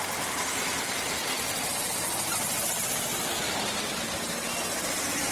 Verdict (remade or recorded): recorded